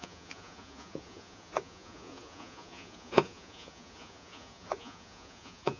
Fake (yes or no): yes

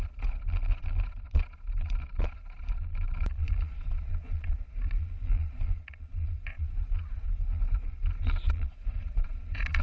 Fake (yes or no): yes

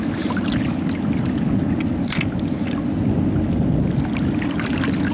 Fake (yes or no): no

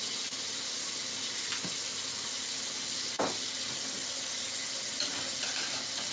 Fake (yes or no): no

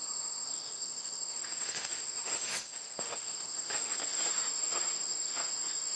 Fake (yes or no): yes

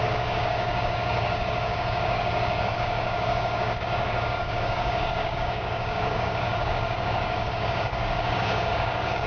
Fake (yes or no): yes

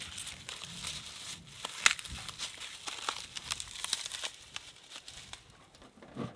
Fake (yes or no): no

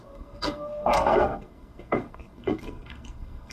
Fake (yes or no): yes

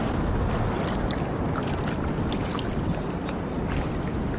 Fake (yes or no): no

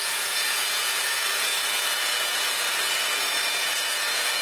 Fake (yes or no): yes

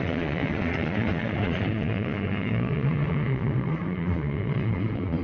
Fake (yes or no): yes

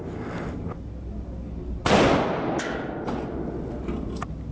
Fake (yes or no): no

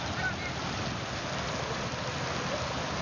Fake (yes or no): no